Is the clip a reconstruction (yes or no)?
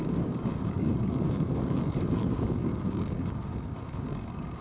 yes